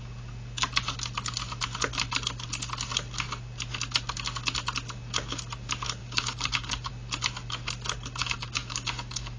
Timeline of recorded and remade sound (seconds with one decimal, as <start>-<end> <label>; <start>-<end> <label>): 0.0-6.0 recorded; 6.0-6.9 remade; 6.9-8.2 recorded; 8.2-9.4 remade